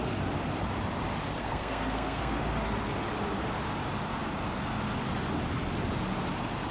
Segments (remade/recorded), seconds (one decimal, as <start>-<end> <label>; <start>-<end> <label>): 0.0-1.4 recorded; 1.4-2.4 remade; 2.4-6.7 recorded